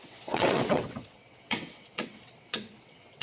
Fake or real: fake